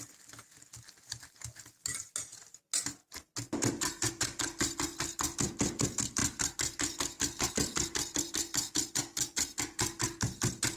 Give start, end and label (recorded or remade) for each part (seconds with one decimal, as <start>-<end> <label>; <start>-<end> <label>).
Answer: 0.0-10.8 recorded